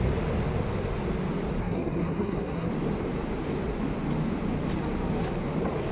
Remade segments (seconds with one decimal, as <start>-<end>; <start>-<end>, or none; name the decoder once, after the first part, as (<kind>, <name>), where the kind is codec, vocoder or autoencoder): 1.6-2.7 (codec, SNAC)